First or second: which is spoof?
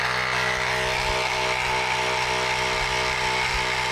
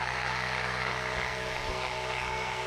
second